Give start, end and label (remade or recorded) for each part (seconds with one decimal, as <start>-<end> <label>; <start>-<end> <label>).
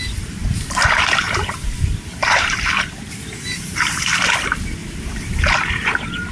0.0-0.4 recorded; 0.4-4.0 remade; 4.0-4.8 recorded; 4.8-5.7 remade; 5.7-6.3 recorded